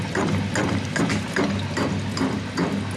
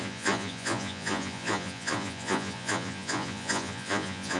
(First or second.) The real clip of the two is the first